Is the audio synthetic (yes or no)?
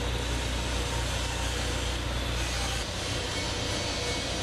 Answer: no